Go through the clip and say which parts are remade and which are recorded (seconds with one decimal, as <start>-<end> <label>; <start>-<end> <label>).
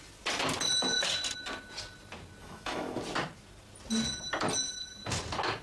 0.0-2.4 recorded; 2.4-3.0 remade; 3.0-5.6 recorded